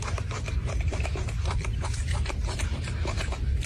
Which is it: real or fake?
fake